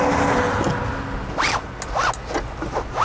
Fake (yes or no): no